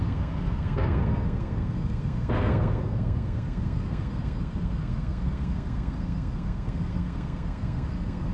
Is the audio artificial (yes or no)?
yes